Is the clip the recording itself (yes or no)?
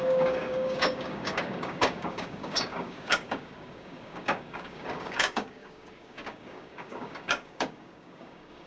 no